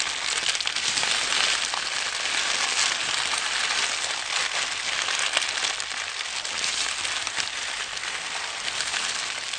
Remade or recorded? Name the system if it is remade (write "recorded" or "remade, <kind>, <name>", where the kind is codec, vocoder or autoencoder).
recorded